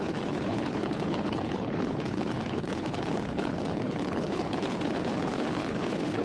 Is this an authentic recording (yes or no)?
no